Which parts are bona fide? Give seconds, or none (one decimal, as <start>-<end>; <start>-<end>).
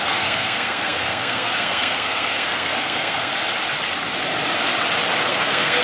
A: 3.3-5.3